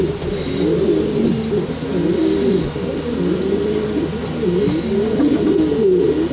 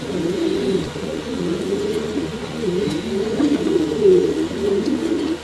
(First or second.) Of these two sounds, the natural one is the first